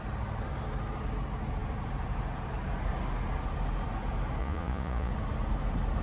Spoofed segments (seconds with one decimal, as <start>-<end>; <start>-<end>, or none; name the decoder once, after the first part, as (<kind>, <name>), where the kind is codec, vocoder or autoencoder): 4.4-5.1 (vocoder, Vocos)